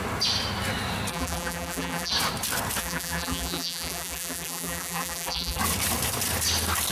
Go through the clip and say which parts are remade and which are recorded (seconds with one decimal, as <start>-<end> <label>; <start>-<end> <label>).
0.0-1.1 recorded; 1.1-2.1 remade; 2.1-2.8 recorded; 2.8-5.6 remade; 5.6-6.9 recorded